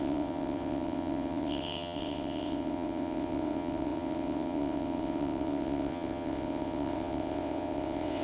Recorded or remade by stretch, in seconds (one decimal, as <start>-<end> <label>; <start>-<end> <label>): 0.0-8.2 remade